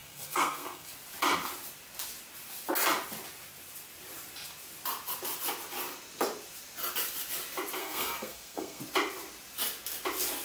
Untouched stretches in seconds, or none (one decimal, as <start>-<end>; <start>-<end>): 0.9-7.8; 8.8-10.4